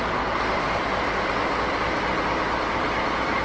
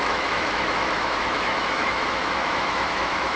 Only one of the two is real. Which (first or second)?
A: first